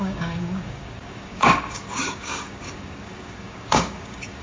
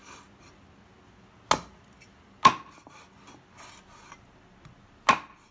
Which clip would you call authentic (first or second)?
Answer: second